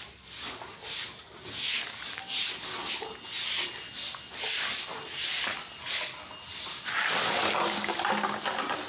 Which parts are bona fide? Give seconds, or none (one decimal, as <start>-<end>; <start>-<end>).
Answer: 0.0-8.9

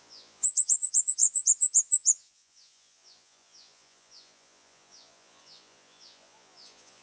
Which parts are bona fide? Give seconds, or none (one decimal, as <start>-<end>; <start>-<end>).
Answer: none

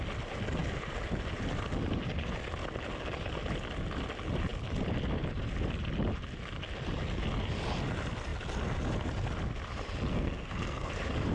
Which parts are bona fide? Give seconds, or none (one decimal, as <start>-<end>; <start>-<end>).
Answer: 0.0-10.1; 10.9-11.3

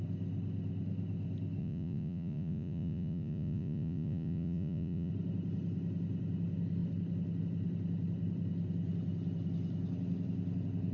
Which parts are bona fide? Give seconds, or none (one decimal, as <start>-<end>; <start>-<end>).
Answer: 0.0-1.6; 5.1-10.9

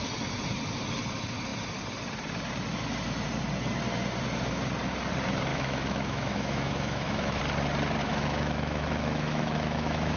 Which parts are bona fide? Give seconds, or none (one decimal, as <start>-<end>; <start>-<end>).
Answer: 0.0-5.5; 7.4-8.0

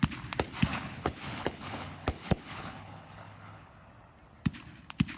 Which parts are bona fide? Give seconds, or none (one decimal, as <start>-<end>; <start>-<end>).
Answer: 0.0-0.7; 3.7-5.2

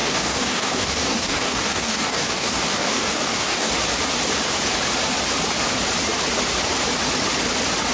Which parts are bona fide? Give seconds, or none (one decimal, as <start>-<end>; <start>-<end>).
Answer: 3.7-7.9

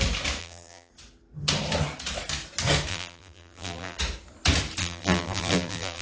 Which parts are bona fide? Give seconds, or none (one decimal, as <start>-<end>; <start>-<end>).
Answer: 0.0-0.4; 0.9-2.9; 4.0-4.8